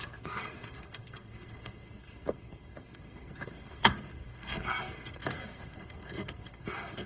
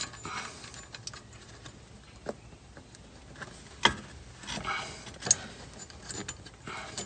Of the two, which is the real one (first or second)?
second